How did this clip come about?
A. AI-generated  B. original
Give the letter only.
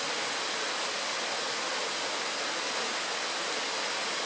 B